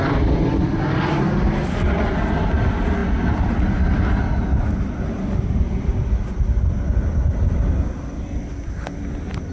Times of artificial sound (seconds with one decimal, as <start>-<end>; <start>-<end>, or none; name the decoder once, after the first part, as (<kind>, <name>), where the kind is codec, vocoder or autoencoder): none